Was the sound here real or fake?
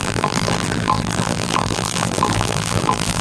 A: fake